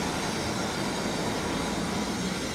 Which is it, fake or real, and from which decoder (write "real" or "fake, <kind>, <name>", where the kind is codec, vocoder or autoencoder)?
real